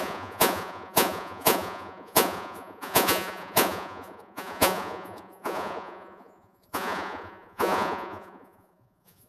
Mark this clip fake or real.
fake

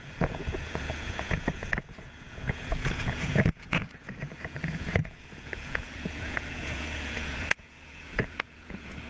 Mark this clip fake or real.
fake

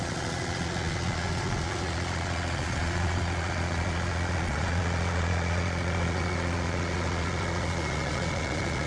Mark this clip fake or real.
fake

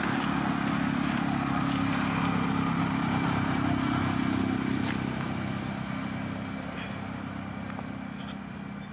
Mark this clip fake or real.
real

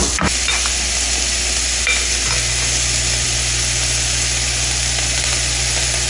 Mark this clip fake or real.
real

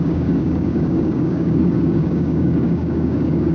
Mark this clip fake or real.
fake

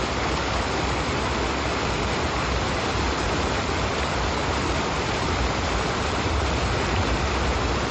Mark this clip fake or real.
real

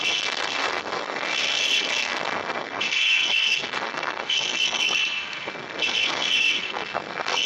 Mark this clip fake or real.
fake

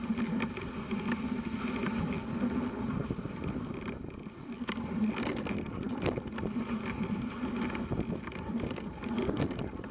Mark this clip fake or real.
real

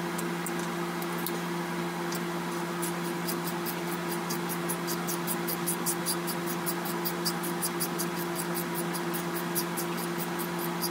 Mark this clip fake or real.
real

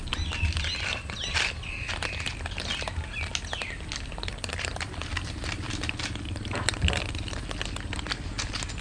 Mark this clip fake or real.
real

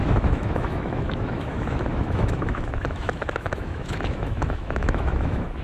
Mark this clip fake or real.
fake